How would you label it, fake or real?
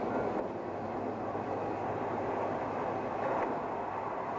real